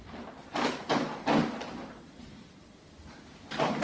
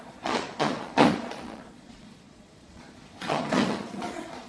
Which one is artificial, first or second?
second